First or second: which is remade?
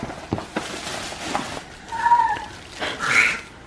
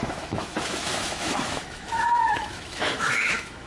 second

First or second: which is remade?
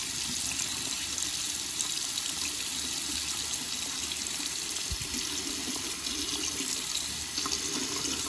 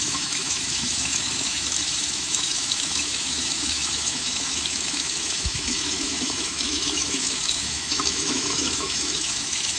second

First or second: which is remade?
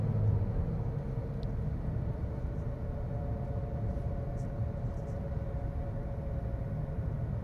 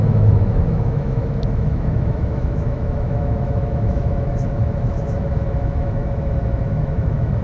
second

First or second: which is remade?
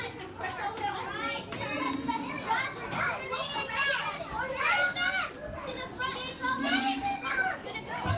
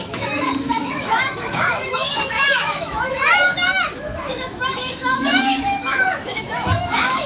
second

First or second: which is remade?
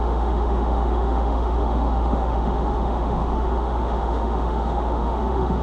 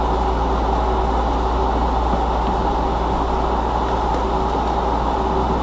first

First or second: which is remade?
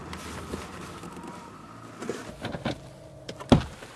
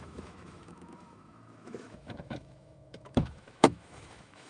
second